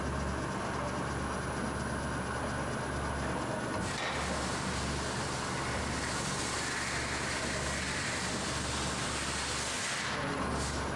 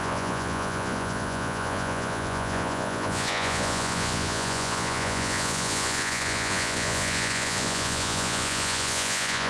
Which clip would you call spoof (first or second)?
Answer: second